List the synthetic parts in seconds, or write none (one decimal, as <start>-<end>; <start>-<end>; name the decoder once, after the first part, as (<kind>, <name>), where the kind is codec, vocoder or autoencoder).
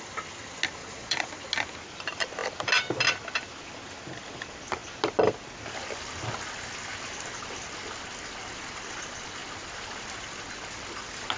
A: 0.8-1.3 (vocoder, Vocos)